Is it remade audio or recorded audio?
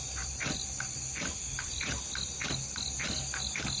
recorded